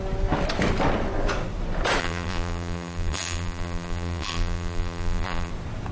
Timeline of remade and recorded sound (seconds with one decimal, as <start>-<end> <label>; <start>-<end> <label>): 0.0-2.0 recorded; 2.0-5.5 remade; 5.5-5.9 recorded

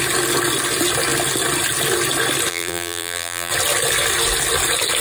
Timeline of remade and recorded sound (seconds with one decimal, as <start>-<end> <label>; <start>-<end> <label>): 0.0-2.5 recorded; 2.5-3.5 remade; 3.5-5.0 recorded

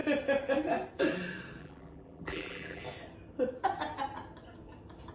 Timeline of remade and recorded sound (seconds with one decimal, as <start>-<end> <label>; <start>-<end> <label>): 0.0-1.6 recorded; 1.6-2.8 remade; 2.8-5.1 recorded

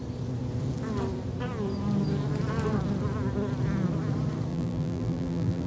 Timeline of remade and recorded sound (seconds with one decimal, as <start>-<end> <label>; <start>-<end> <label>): 0.0-4.5 recorded; 4.5-5.7 remade

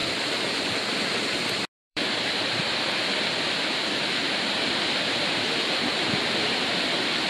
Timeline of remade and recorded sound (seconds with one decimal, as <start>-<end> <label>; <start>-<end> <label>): 0.0-1.8 recorded; 1.8-6.2 remade; 6.2-7.3 recorded

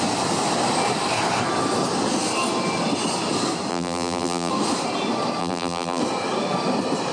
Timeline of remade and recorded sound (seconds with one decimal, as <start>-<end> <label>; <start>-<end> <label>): 0.0-3.7 recorded; 3.7-4.5 remade; 4.5-5.4 recorded; 5.4-6.0 remade; 6.0-7.1 recorded

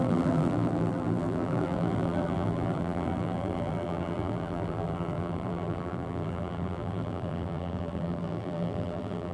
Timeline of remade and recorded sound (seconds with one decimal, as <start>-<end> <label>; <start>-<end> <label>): 0.0-9.3 remade